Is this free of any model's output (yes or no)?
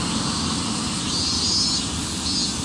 yes